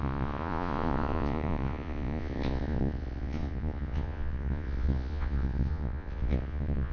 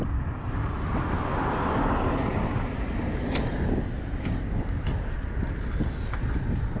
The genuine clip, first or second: second